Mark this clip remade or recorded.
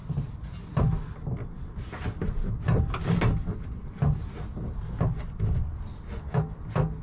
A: recorded